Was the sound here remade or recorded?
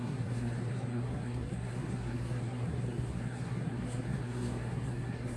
remade